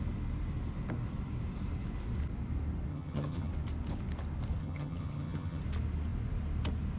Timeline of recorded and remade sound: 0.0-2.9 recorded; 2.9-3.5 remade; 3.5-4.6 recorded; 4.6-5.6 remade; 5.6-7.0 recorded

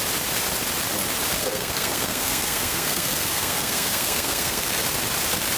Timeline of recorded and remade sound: 0.0-1.4 recorded; 1.4-4.8 remade; 4.8-5.6 recorded

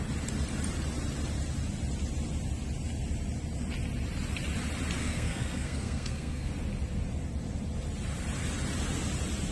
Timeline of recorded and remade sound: 0.0-5.0 recorded; 5.0-6.5 remade; 6.5-9.5 recorded

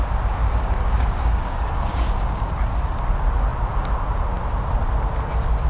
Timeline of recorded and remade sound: 0.0-0.4 recorded; 0.4-2.4 remade; 2.4-5.7 recorded

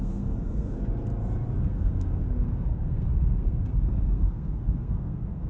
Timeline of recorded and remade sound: 0.0-0.8 remade; 0.8-1.7 recorded; 1.7-5.5 remade

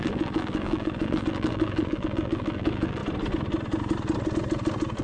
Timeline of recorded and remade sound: 0.0-3.0 remade; 3.0-5.0 recorded

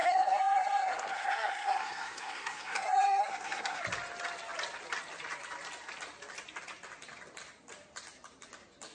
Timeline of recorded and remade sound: 0.0-3.8 remade; 3.8-8.9 recorded